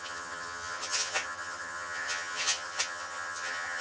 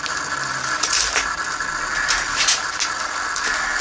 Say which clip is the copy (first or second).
first